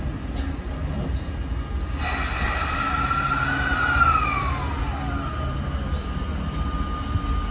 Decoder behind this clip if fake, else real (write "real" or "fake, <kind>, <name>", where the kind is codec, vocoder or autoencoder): real